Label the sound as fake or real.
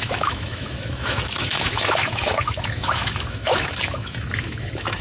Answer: fake